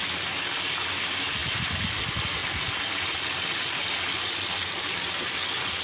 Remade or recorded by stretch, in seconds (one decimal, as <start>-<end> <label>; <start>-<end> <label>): 0.0-1.4 recorded; 1.4-1.9 remade; 1.9-2.4 recorded; 2.4-3.2 remade; 3.2-5.8 recorded

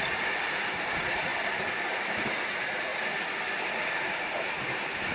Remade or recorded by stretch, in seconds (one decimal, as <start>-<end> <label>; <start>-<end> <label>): 0.0-2.9 remade; 2.9-4.3 recorded; 4.3-5.1 remade

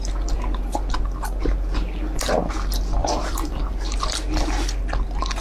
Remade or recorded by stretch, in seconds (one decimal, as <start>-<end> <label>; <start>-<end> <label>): 0.0-3.0 recorded; 3.0-3.6 remade; 3.6-5.4 recorded

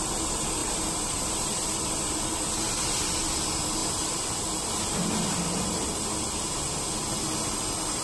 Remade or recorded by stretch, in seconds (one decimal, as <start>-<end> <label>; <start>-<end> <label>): 0.0-0.6 recorded; 0.6-2.1 remade; 2.1-8.0 recorded

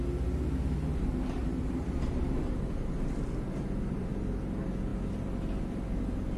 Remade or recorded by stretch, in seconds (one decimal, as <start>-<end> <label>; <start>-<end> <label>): 0.0-1.4 recorded; 1.4-4.2 remade; 4.2-6.4 recorded